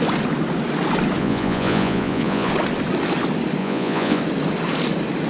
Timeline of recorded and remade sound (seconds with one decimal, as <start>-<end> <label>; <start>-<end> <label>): 0.0-1.2 recorded; 1.2-2.5 remade; 2.5-3.6 recorded; 3.6-4.2 remade; 4.2-5.3 recorded